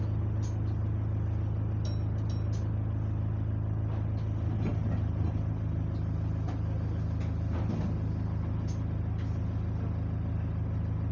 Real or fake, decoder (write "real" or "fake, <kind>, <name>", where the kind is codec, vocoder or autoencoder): real